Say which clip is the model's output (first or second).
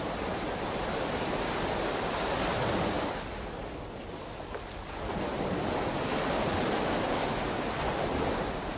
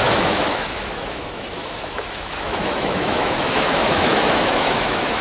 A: second